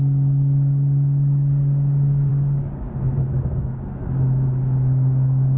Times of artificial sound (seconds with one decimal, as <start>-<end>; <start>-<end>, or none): 2.3-3.9